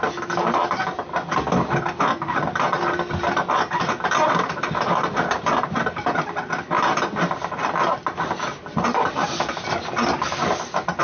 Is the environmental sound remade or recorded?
recorded